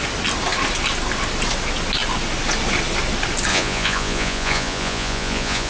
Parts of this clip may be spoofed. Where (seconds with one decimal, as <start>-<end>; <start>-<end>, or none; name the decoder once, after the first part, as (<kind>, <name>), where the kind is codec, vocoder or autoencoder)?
3.5-5.7 (vocoder, Vocos)